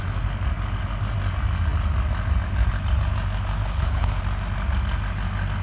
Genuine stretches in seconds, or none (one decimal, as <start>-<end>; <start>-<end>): 0.0-3.6; 4.2-5.6